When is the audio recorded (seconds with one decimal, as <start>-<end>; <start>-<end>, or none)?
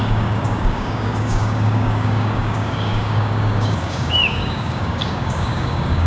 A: none